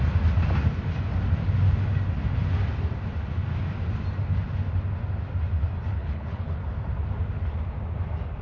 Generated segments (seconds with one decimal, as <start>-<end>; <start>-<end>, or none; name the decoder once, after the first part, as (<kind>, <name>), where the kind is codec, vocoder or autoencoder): 5.9-6.6 (codec, HILCodec)